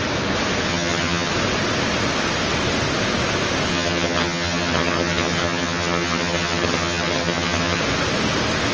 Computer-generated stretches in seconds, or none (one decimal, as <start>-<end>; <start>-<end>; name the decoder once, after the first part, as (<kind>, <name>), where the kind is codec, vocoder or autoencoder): 0.7-1.3 (vocoder, HiFi-GAN); 3.7-7.8